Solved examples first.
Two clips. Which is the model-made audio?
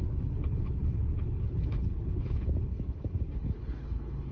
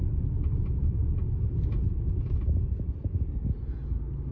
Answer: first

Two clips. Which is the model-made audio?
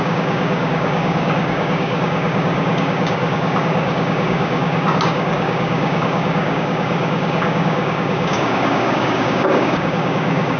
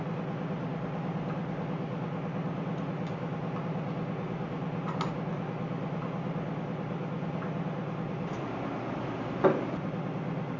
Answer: first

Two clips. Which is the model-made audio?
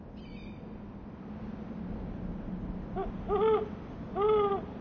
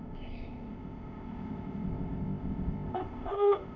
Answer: second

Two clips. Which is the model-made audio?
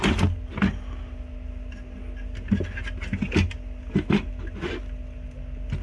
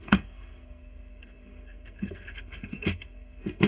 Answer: second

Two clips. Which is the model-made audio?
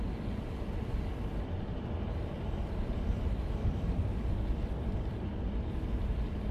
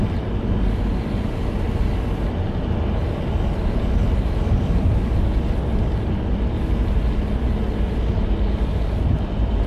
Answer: first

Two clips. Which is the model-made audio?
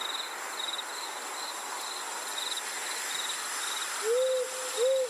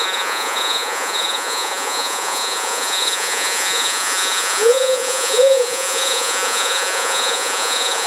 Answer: second